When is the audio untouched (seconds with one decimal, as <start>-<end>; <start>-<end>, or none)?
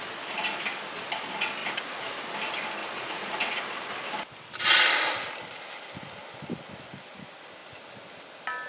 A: 0.0-1.6; 2.2-2.8; 3.5-8.7